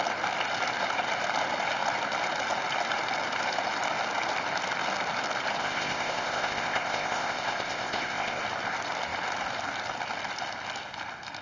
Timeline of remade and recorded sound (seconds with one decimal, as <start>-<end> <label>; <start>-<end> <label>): 0.0-5.6 recorded; 5.6-8.4 remade; 8.4-11.4 recorded